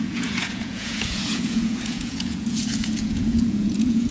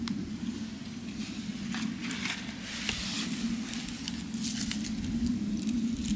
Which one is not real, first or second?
first